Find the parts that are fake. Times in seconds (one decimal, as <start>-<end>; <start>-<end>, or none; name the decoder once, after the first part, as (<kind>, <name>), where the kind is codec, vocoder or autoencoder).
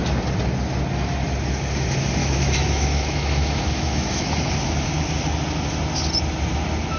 2.2-4.3 (autoencoder, DAC-VAE)